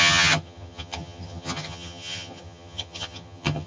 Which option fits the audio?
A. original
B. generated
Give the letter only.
B